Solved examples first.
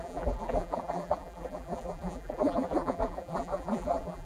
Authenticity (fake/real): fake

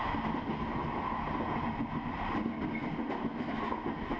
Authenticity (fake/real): real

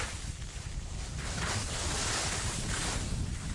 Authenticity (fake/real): real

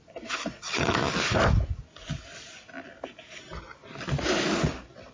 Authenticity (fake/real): real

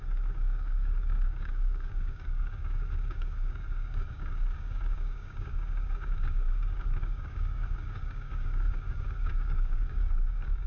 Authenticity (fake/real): fake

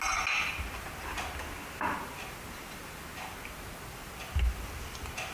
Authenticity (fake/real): real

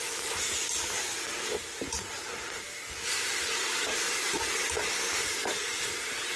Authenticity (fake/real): real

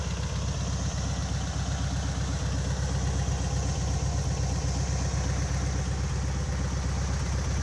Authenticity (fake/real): real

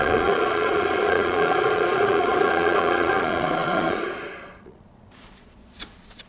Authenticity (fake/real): fake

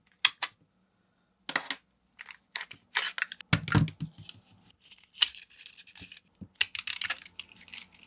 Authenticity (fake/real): real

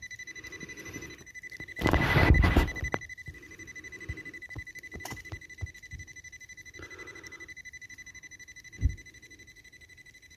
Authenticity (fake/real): fake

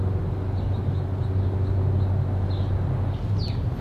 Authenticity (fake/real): real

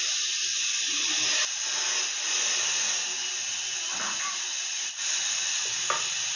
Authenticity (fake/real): real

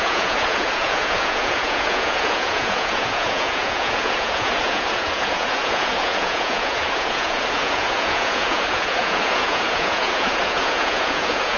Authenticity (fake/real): fake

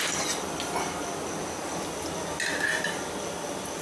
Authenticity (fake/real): real